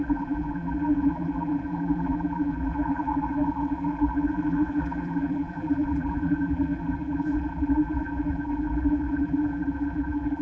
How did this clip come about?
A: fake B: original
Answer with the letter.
A